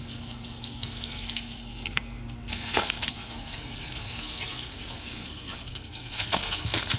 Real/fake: fake